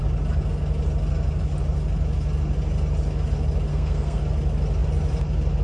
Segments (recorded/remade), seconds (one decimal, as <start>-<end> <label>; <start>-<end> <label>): 0.0-3.7 recorded; 3.7-4.2 remade; 4.2-5.6 recorded